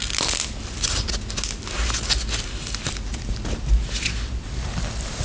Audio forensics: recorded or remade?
recorded